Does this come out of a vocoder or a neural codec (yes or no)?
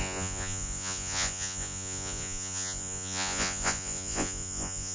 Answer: yes